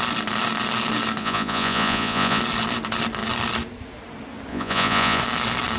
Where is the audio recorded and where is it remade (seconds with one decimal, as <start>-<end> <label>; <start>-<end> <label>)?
0.0-1.2 recorded; 1.2-2.4 remade; 2.4-4.5 recorded; 4.5-5.2 remade; 5.2-5.8 recorded